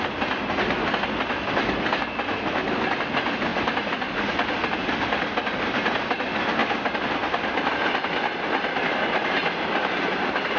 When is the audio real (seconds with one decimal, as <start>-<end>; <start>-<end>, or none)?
0.0-10.6